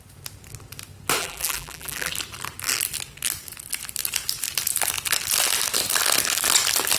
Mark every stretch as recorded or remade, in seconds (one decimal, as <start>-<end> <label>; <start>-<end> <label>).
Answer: 0.0-1.2 recorded; 1.2-2.1 remade; 2.1-7.0 recorded